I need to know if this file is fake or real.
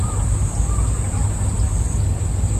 real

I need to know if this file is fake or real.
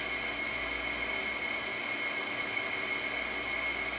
real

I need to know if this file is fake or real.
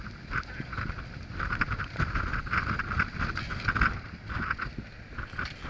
real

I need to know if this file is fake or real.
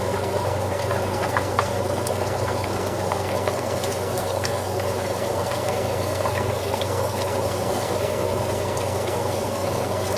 fake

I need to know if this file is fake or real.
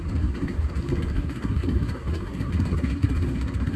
fake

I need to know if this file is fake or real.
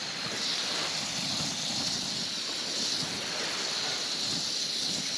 real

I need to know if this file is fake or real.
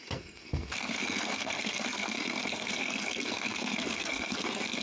fake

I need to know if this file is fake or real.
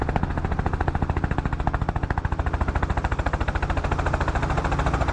real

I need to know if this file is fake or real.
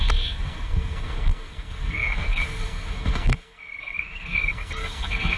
fake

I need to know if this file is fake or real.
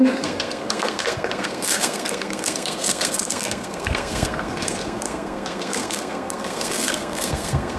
fake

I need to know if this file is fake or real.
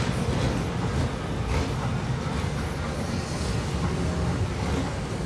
real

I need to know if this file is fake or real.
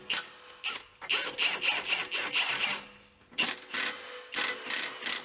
real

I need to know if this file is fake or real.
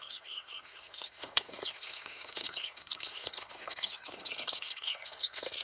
fake